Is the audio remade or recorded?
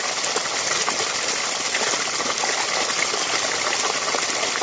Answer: recorded